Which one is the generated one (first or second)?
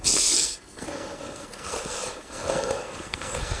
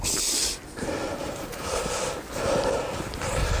first